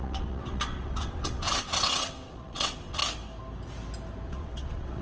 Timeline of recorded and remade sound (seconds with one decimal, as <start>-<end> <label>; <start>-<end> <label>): 0.0-3.0 remade; 3.0-4.3 recorded; 4.3-5.0 remade